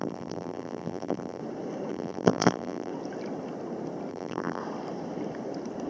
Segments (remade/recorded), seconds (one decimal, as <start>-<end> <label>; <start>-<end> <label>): 0.0-1.4 remade; 1.4-1.9 recorded; 1.9-2.9 remade; 2.9-4.1 recorded; 4.1-4.6 remade; 4.6-5.9 recorded

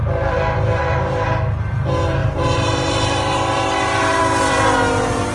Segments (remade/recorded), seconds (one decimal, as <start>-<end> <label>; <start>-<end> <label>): 0.0-2.2 recorded; 2.2-4.2 remade; 4.2-5.3 recorded